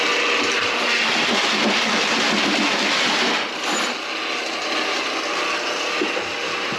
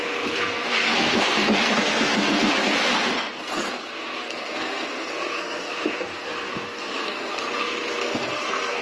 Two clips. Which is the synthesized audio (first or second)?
second